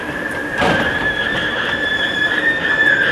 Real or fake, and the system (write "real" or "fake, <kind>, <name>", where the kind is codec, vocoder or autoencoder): fake, vocoder, BigVGAN v2